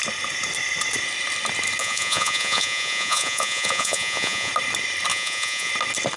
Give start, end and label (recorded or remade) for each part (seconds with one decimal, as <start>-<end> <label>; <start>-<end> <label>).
0.0-1.8 recorded; 1.8-4.5 remade; 4.5-5.1 recorded; 5.1-5.7 remade; 5.7-6.2 recorded